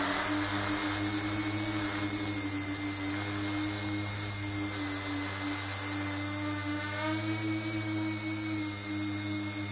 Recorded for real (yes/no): yes